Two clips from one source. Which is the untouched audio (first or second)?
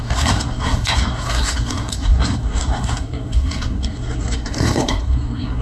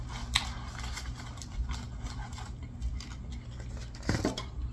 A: second